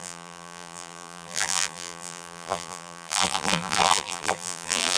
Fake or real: fake